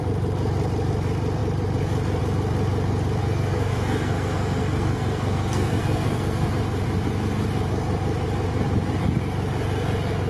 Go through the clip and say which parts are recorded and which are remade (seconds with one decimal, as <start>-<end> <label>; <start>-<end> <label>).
0.0-3.2 recorded; 3.2-6.5 remade; 6.5-10.3 recorded